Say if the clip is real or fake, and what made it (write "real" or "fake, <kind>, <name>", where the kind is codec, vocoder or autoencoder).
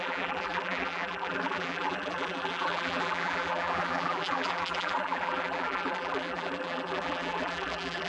fake, vocoder, BigVGAN v2